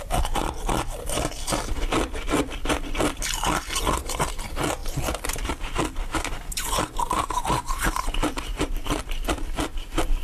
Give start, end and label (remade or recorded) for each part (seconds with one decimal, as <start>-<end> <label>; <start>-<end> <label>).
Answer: 0.0-4.8 recorded; 4.8-5.5 remade; 5.5-6.0 recorded; 6.0-9.0 remade; 9.0-10.2 recorded